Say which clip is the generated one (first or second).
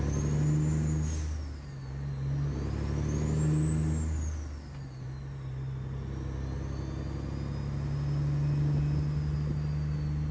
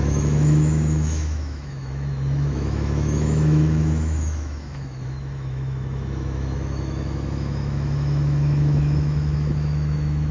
second